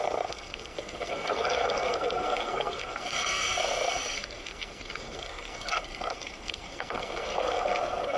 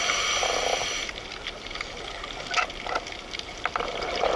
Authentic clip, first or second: second